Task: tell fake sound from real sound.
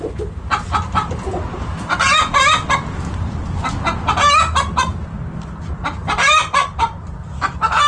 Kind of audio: real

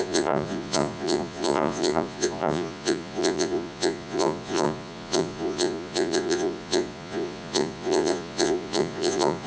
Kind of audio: fake